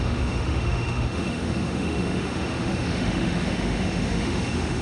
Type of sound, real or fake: fake